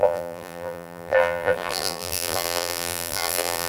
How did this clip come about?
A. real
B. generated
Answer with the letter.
B